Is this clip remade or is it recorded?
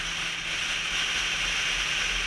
recorded